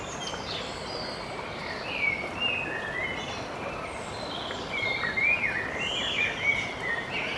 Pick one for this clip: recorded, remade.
recorded